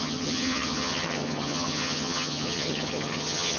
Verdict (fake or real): fake